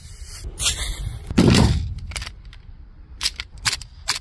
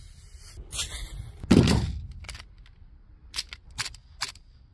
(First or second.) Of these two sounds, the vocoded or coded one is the first